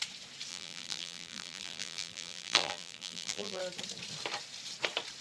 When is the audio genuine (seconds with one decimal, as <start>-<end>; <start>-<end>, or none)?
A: 0.0-0.5; 3.6-5.2